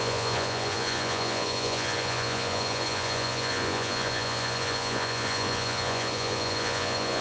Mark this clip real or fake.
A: fake